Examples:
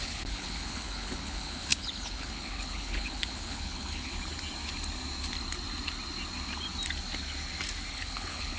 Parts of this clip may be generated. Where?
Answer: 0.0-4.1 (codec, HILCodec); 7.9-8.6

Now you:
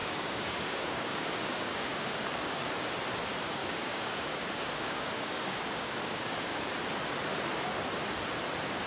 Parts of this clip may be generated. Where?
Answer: 0.0-2.7 (codec, DAC); 3.6-6.6